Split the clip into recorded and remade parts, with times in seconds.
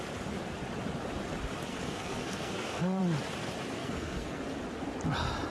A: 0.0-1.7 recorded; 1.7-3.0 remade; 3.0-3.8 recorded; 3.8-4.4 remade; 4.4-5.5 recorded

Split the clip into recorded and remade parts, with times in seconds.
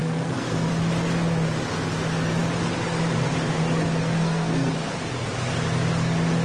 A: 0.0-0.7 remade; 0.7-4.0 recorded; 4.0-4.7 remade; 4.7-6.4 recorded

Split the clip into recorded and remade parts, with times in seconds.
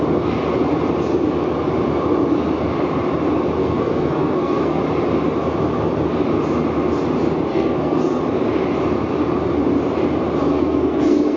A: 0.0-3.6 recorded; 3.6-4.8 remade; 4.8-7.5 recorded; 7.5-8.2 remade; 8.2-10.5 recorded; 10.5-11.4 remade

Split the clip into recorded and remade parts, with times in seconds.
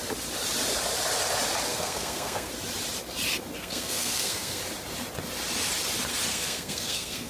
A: 0.0-1.7 recorded; 1.7-2.5 remade; 2.5-3.6 recorded; 3.6-4.6 remade; 4.6-6.3 recorded; 6.3-7.3 remade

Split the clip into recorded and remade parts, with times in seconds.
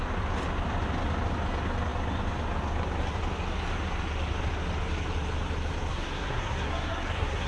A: 0.0-5.9 recorded; 5.9-7.5 remade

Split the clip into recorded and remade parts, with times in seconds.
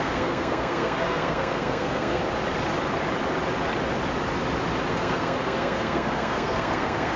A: 0.0-2.2 remade; 2.2-4.9 recorded; 4.9-7.2 remade